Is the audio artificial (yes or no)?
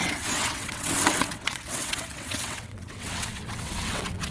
yes